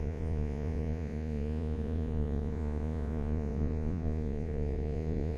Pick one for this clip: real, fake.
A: fake